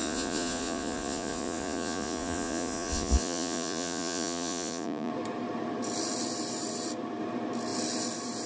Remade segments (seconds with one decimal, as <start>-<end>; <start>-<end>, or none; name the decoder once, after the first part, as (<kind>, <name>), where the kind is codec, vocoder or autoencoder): 0.0-5.1 (vocoder, Vocos)